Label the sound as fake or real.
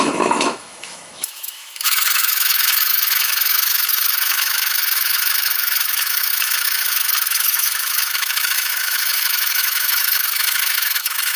fake